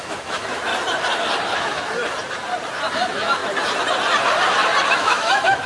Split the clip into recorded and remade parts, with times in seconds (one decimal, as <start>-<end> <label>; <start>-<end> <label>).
0.0-0.7 remade; 0.7-1.6 recorded; 1.6-2.0 remade; 2.0-2.9 recorded; 2.9-3.4 remade; 3.4-4.9 recorded; 4.9-5.7 remade